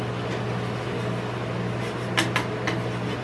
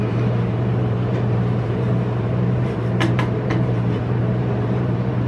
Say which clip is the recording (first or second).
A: first